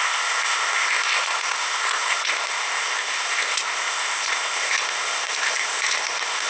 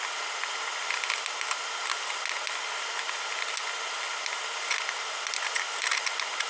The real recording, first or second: second